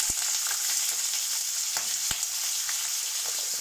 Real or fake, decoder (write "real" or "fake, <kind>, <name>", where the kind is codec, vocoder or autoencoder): real